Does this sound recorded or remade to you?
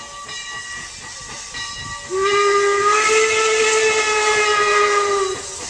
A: recorded